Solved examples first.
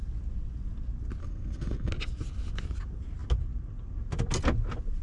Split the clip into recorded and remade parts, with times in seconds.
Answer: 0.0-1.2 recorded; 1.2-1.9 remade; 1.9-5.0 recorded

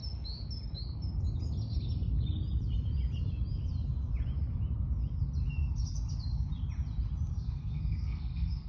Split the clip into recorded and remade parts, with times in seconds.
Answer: 0.0-7.3 recorded; 7.3-8.7 remade

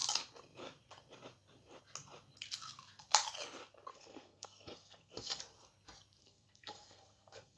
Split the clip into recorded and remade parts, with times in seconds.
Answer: 0.0-3.9 recorded; 3.9-5.4 remade; 5.4-6.2 recorded; 6.2-7.6 remade